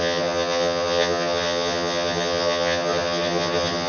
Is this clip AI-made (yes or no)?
yes